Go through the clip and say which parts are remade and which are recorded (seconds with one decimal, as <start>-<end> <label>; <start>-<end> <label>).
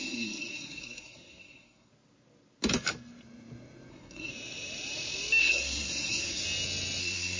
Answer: 0.0-1.9 remade; 1.9-3.9 recorded; 3.9-4.3 remade; 4.3-5.4 recorded; 5.4-6.4 remade; 6.4-7.0 recorded; 7.0-7.4 remade